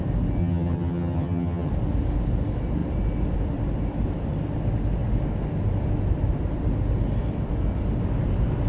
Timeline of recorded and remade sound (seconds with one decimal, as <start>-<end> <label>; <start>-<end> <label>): 0.0-0.4 recorded; 0.4-1.7 remade; 1.7-8.7 recorded

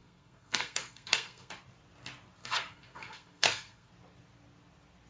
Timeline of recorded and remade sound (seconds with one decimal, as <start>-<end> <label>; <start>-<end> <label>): 0.0-1.5 remade; 1.5-2.4 recorded; 2.4-3.9 remade; 3.9-5.1 recorded

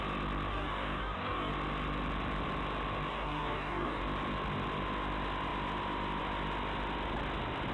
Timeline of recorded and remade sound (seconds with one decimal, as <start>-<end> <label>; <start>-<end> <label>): 0.0-0.5 recorded; 0.5-1.5 remade; 1.5-3.1 recorded; 3.1-4.0 remade; 4.0-7.7 recorded

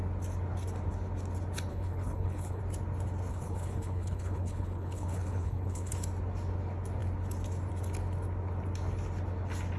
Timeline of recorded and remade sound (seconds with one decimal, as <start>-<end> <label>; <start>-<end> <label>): 0.0-1.7 recorded; 1.7-2.6 remade; 2.6-3.3 recorded; 3.3-5.9 remade; 5.9-9.8 recorded

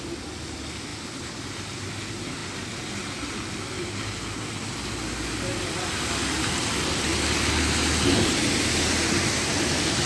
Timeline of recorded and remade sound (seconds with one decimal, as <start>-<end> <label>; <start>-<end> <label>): 0.0-10.1 recorded

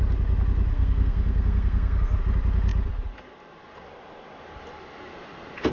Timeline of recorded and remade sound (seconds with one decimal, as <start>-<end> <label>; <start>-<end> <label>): 0.0-0.7 recorded; 0.7-2.2 remade; 2.2-5.7 recorded

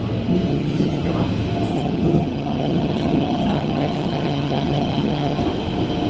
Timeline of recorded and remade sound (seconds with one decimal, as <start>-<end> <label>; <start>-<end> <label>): 0.0-0.5 recorded; 0.5-1.1 remade; 1.1-1.7 recorded; 1.7-5.4 remade; 5.4-6.1 recorded

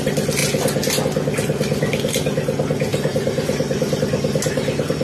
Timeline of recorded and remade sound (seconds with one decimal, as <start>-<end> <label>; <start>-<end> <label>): 0.0-2.9 recorded; 2.9-4.0 remade; 4.0-5.0 recorded